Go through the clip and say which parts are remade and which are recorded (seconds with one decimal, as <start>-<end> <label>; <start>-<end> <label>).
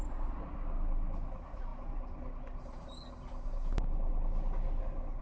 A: 0.0-5.2 recorded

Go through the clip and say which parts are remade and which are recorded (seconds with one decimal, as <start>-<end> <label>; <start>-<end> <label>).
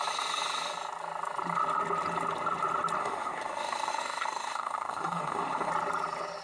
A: 0.0-3.0 recorded; 3.0-5.7 remade; 5.7-6.4 recorded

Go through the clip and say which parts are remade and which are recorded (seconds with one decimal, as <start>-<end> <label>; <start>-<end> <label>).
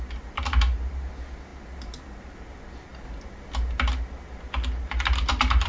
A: 0.0-5.7 recorded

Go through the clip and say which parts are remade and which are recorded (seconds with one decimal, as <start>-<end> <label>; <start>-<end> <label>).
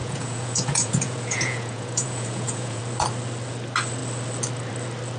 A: 0.0-2.8 remade; 2.8-5.2 recorded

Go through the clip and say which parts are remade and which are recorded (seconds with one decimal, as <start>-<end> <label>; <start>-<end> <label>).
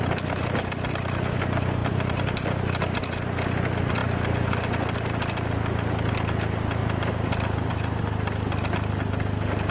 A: 0.0-1.8 recorded; 1.8-2.6 remade; 2.6-6.8 recorded; 6.8-8.0 remade; 8.0-9.7 recorded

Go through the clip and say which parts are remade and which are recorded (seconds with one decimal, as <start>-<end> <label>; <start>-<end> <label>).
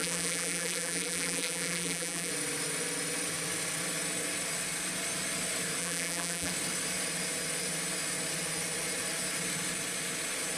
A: 0.0-2.3 remade; 2.3-5.8 recorded; 5.8-6.5 remade; 6.5-10.6 recorded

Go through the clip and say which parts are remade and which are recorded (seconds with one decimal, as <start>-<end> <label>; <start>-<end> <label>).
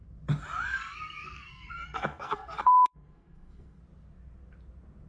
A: 0.0-0.7 recorded; 0.7-3.8 remade; 3.8-5.1 recorded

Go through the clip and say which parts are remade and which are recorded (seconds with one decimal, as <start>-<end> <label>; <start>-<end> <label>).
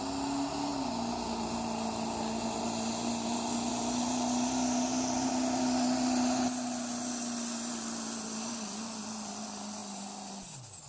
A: 0.0-10.9 recorded